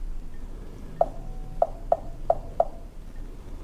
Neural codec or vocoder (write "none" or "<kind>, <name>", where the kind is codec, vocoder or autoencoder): none